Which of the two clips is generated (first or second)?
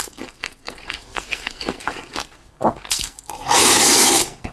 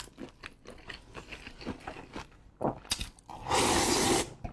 first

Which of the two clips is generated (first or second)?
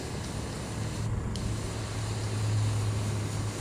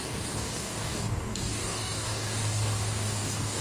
second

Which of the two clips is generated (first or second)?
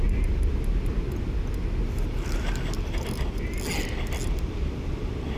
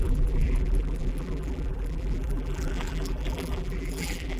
second